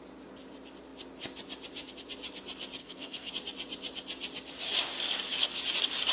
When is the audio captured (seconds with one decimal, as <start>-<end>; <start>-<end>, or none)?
0.0-2.8; 3.3-6.1